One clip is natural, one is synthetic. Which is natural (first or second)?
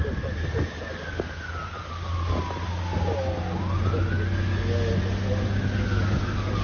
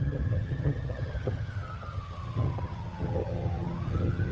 first